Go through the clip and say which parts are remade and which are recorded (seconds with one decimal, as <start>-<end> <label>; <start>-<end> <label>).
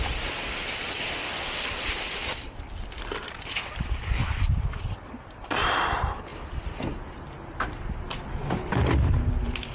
0.0-9.7 recorded